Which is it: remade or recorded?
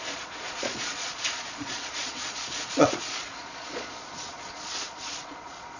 remade